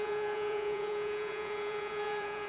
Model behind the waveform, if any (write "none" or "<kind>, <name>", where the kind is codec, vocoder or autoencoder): vocoder, Vocos